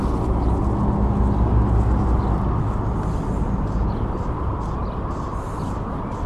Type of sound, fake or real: real